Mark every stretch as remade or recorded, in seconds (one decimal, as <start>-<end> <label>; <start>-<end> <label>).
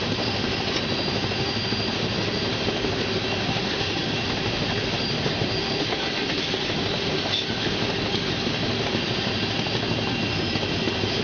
0.0-11.2 recorded